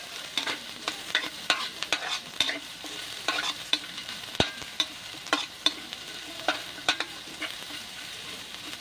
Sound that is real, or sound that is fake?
fake